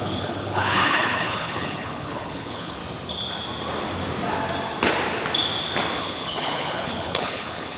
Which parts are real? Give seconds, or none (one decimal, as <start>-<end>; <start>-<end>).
2.8-6.0